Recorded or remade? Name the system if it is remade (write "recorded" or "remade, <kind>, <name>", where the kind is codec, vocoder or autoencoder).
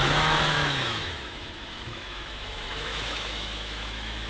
remade, autoencoder, DAC-VAE